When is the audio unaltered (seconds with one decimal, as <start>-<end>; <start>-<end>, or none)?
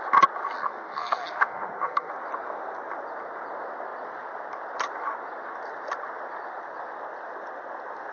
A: 0.0-0.6; 2.1-8.1